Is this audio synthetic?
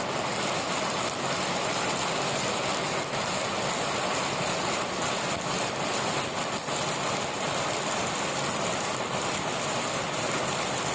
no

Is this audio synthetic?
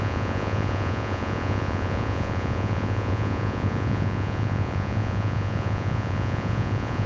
yes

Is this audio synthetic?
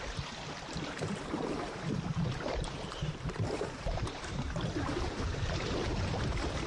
yes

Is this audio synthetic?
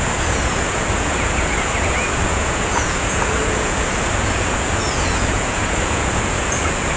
yes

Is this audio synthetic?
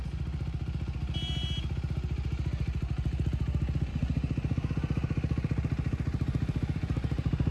no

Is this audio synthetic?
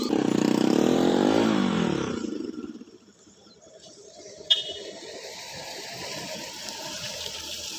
yes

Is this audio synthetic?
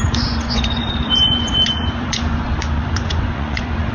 yes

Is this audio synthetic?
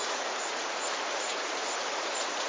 yes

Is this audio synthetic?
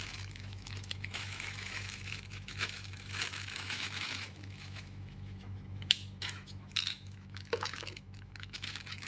yes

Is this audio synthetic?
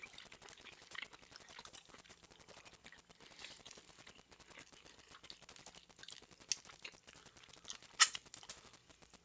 no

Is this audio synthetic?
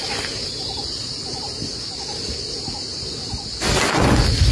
no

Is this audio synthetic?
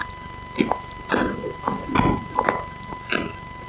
no